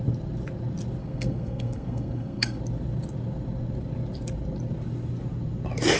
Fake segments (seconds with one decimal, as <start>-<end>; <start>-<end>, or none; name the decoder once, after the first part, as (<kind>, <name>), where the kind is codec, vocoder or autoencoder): 1.0-2.6 (codec, SNAC)